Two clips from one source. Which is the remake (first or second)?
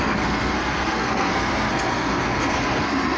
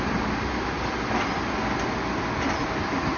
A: first